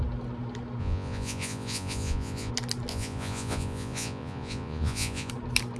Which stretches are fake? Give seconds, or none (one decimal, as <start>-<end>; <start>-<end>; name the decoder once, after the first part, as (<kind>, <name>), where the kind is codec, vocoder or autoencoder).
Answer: 0.8-2.5 (vocoder, Vocos); 2.9-5.3